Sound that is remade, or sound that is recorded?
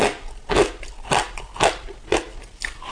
recorded